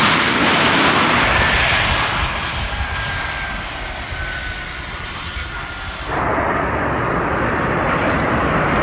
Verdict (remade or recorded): recorded